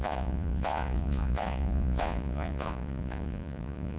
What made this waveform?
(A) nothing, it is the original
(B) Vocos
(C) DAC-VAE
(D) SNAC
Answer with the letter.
B